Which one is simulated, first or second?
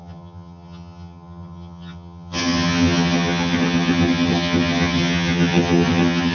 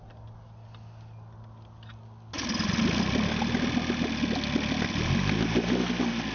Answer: first